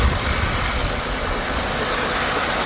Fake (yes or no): no